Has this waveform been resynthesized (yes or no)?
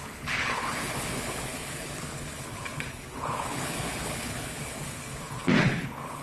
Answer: yes